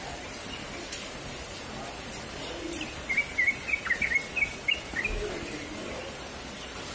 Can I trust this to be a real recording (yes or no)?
yes